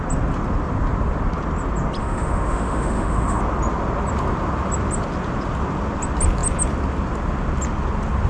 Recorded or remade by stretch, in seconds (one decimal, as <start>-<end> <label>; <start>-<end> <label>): 0.0-2.0 recorded; 2.0-3.4 remade; 3.4-8.3 recorded